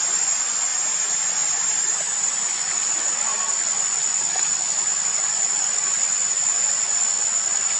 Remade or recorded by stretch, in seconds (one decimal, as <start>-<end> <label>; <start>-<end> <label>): 0.0-0.7 remade; 0.7-1.2 recorded; 1.2-1.6 remade; 1.6-2.3 recorded; 2.3-7.8 remade